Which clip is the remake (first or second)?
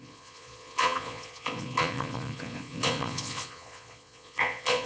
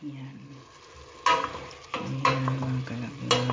first